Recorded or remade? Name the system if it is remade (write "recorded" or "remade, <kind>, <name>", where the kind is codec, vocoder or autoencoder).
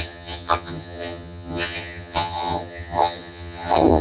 remade, vocoder, HiFi-GAN